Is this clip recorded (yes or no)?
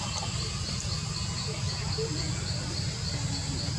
yes